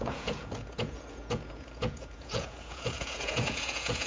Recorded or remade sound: remade